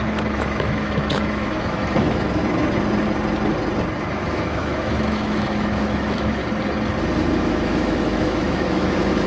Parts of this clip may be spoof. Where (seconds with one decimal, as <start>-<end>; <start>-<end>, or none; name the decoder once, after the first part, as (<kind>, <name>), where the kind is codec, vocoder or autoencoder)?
0.0-2.4 (autoencoder, DAC-VAE); 4.1-6.4; 7.4-9.3